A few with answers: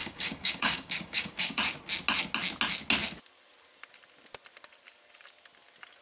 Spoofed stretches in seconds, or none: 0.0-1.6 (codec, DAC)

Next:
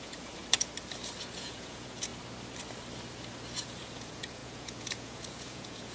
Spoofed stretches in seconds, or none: 0.0-0.4 (vocoder, Vocos); 1.2-2.1; 3.6-5.9